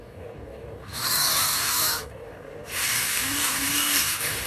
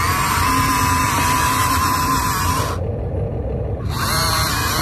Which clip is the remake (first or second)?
first